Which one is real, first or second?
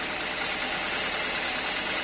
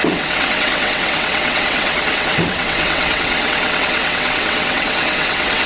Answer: first